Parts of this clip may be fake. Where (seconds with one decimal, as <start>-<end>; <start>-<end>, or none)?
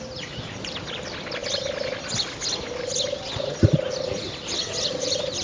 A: 0.0-1.4; 4.6-5.4